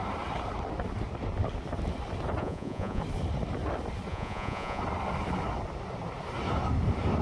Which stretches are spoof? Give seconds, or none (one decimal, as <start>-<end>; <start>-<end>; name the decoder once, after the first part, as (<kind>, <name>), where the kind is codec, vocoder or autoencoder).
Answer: 2.4-3.0 (vocoder, Vocos); 4.1-4.8